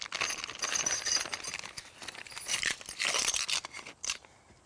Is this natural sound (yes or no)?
yes